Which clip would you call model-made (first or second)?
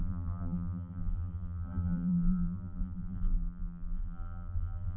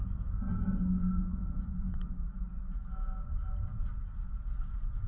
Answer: first